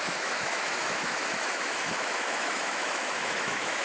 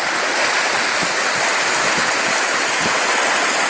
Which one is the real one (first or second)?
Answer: second